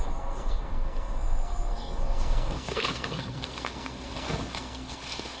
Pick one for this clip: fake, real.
fake